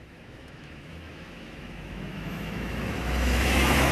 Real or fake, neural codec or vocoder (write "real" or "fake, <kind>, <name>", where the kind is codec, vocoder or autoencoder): fake, autoencoder, DAC-VAE